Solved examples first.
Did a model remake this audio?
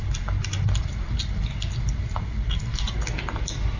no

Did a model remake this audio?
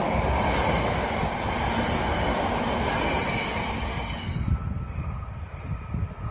no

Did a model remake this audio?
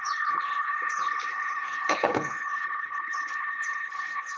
yes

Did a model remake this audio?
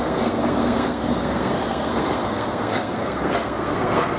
yes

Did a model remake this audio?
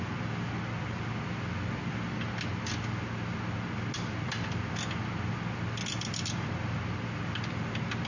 no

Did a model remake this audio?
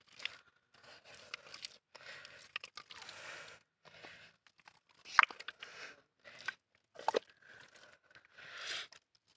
no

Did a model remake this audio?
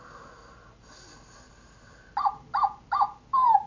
no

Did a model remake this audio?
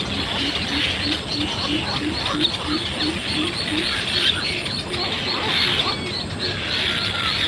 no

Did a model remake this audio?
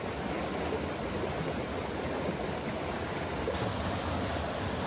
no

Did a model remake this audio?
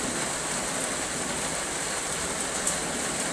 no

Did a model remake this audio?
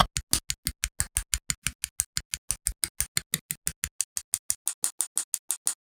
no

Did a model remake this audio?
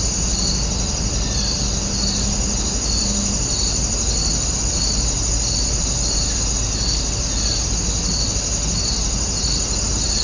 no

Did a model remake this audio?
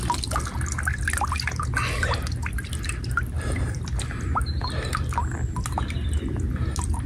no